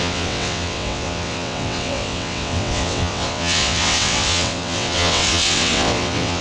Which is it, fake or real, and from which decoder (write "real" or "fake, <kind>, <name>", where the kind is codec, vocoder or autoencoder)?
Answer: fake, vocoder, WaveNeXt